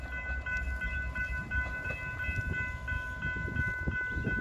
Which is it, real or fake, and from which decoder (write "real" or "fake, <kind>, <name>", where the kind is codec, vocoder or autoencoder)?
real